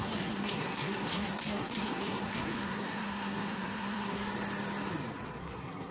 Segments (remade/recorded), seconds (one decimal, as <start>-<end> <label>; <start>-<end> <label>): 0.0-4.3 remade; 4.3-5.4 recorded; 5.4-5.9 remade